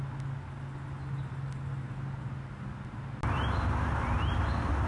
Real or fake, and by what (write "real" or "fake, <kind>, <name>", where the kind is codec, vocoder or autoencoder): real